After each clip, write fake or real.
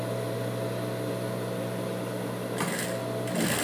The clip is real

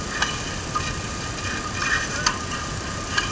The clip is real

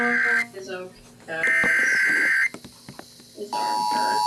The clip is real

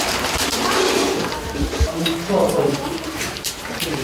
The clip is fake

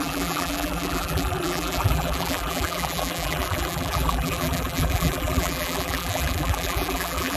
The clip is fake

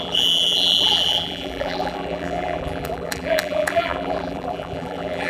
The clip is fake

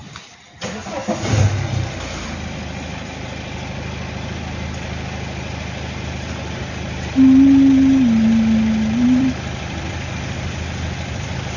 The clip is fake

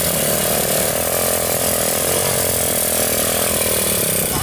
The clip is real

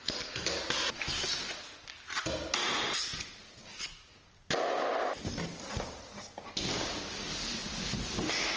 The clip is real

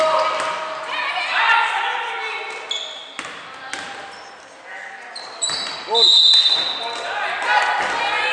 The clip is real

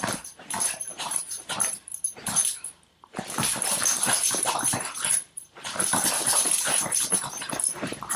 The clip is fake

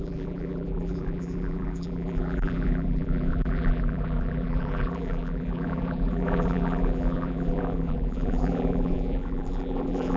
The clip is fake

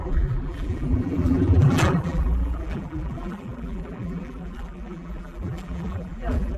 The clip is fake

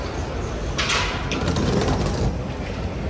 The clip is real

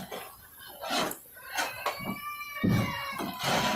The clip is real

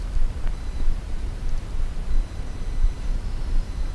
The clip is fake